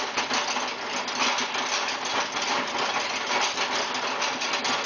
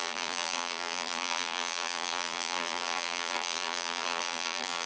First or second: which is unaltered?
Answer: first